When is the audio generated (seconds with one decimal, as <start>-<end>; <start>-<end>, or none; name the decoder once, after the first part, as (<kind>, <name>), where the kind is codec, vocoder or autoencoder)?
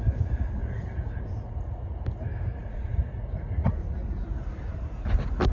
0.6-1.2 (vocoder, Vocos); 2.6-3.7